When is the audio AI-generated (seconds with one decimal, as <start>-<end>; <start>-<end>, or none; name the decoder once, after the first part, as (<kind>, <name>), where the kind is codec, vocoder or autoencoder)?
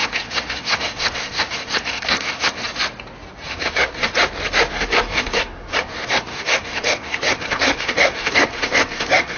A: 0.0-2.6 (codec, SNAC); 3.5-4.1; 4.7-9.4